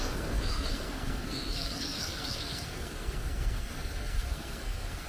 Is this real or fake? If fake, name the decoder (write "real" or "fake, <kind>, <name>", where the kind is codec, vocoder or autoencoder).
fake, codec, SNAC